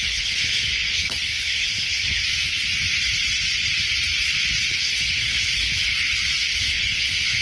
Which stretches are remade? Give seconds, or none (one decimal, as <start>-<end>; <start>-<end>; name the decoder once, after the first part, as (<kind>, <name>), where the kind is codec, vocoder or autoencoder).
0.0-2.2 (codec, HILCodec); 4.7-5.9; 6.5-7.4